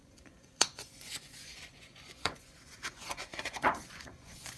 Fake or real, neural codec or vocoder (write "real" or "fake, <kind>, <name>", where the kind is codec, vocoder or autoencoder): fake, vocoder, Vocos